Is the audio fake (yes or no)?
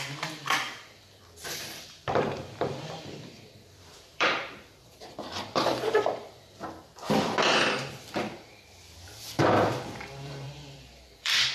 yes